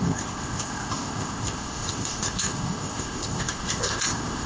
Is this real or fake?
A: fake